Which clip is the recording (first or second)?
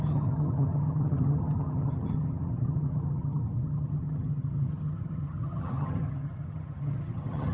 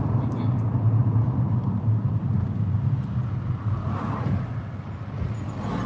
second